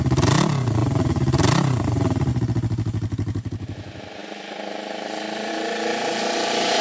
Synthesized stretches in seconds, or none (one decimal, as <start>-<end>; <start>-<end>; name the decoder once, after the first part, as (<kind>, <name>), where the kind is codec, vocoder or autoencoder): 0.8-2.3 (vocoder, BigVGAN v2)